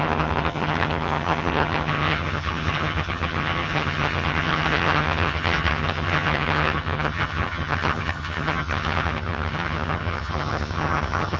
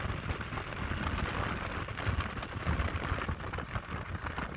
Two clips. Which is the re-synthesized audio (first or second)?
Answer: first